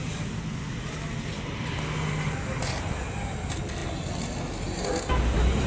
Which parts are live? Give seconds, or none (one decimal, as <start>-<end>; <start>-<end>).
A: 0.0-5.7